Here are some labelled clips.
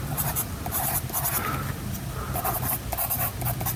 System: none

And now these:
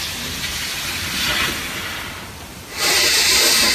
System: vocoder, BigVGAN v2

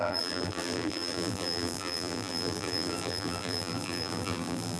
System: vocoder, BigVGAN v2